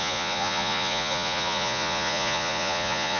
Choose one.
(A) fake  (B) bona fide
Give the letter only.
A